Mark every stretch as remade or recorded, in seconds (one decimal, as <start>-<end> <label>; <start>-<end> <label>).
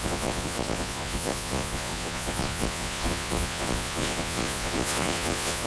0.0-5.7 remade